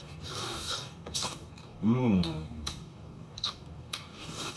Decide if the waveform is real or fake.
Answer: fake